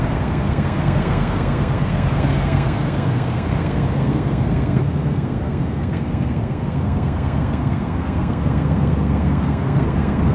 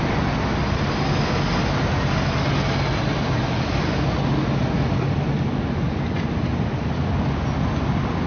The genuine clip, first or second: second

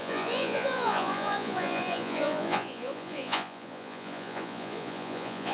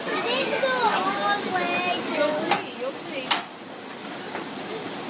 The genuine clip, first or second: second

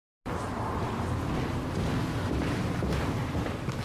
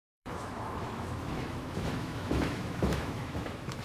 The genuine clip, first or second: first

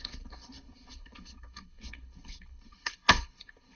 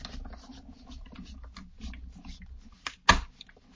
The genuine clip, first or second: second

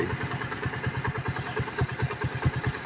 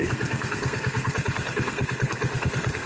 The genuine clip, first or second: first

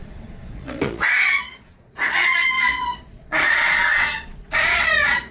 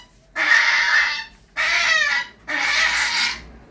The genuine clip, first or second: second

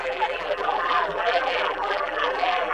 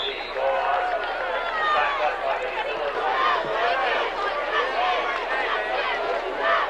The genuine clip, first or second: second